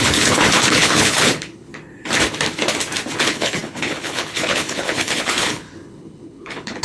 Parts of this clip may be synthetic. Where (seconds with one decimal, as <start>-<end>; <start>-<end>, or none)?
0.0-1.7; 3.2-6.8